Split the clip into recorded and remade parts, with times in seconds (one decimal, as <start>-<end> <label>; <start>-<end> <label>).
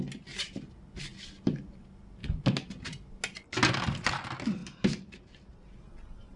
0.0-6.4 recorded